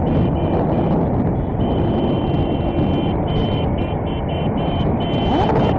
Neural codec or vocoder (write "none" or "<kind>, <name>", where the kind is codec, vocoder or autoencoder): none